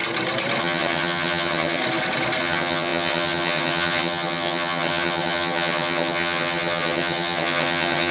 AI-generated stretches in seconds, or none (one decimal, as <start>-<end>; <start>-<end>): 0.6-1.8; 2.4-8.1